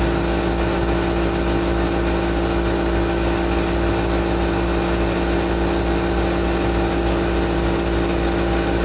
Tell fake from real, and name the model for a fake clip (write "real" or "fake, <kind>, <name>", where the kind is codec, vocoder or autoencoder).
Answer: real